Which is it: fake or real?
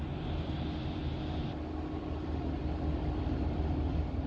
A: real